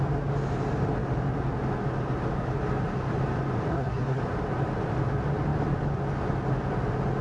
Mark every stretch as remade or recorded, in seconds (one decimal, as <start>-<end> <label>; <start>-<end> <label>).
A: 0.0-3.7 recorded; 3.7-4.2 remade; 4.2-7.2 recorded